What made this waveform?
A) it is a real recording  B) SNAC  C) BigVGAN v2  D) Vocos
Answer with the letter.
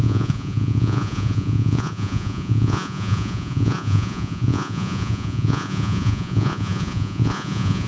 D